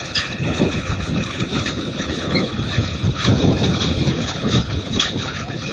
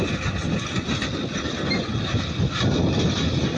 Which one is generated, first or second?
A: first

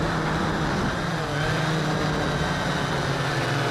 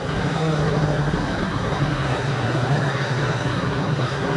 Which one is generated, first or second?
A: second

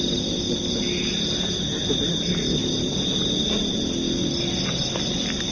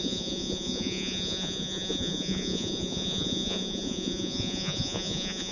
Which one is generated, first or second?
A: second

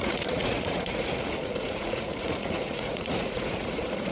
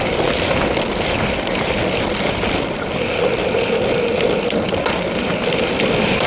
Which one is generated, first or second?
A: first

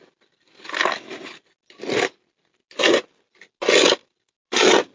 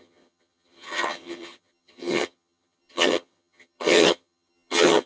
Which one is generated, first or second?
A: second